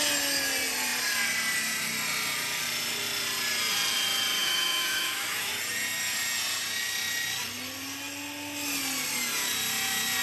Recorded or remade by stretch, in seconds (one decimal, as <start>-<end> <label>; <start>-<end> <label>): 0.0-4.4 recorded; 4.4-5.5 remade; 5.5-10.2 recorded